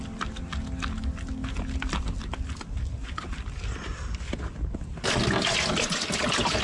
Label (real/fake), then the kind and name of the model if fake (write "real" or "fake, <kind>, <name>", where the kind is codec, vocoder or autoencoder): real